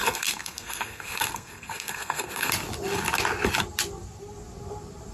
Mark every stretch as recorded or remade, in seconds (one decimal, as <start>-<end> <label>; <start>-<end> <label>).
0.0-2.5 remade; 2.5-5.1 recorded